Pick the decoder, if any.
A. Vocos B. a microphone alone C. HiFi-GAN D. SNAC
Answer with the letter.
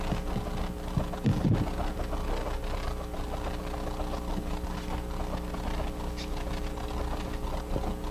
B